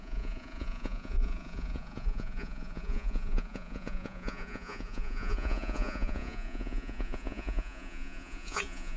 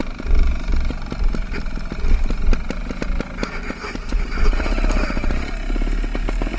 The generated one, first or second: first